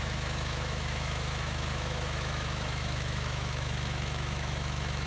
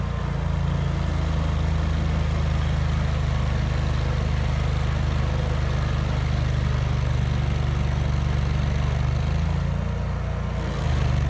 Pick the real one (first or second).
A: second